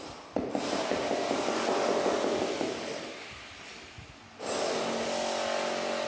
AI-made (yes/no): no